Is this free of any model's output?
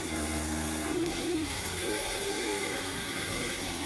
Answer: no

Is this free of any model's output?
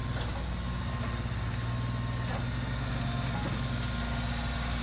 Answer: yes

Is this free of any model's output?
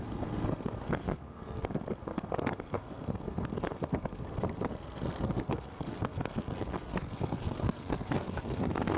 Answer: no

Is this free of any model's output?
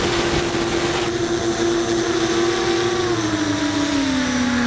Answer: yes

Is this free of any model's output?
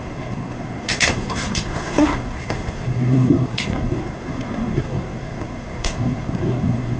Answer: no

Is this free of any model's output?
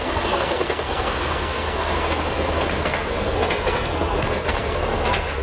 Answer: no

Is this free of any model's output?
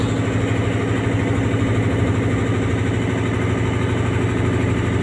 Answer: yes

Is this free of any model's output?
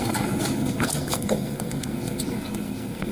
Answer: no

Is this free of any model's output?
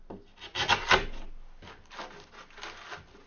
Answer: yes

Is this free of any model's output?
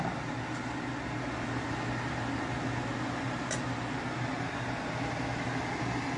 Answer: yes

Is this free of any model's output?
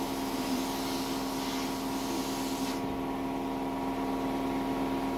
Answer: yes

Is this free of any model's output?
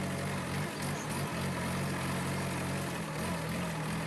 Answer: yes